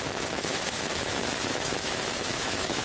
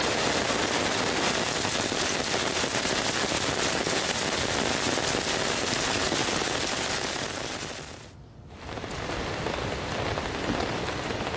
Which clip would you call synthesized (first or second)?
first